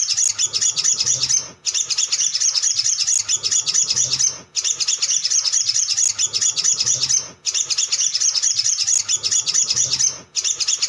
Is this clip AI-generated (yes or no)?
no